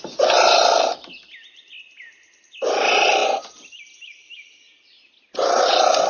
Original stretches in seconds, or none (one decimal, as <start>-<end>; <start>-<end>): 0.0-6.1